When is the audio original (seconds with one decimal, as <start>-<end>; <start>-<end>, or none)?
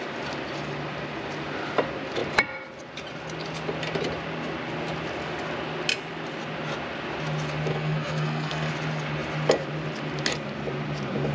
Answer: 0.0-7.7; 8.7-11.3